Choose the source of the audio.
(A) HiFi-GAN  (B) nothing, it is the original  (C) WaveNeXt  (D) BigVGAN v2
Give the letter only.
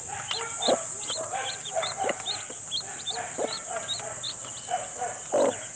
B